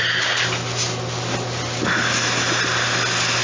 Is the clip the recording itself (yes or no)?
yes